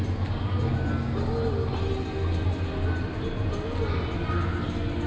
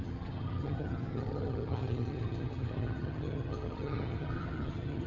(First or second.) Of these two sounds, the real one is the first